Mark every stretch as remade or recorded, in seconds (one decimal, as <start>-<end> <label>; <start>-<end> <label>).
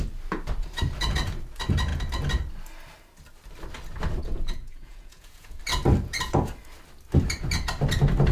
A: 0.0-4.2 recorded; 4.2-5.6 remade; 5.6-8.3 recorded